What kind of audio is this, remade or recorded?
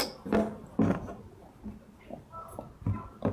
recorded